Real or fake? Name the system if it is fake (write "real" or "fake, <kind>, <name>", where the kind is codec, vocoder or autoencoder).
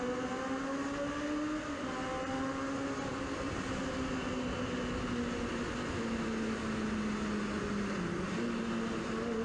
real